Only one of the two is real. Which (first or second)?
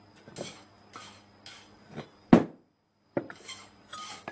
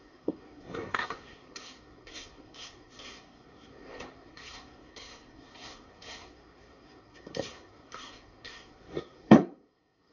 first